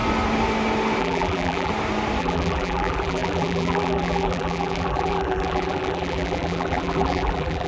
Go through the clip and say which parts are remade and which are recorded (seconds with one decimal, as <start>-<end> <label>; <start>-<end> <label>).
0.0-1.0 recorded; 1.0-1.7 remade; 1.7-2.2 recorded; 2.2-7.7 remade